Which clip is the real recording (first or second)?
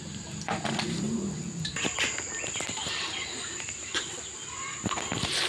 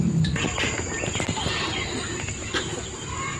second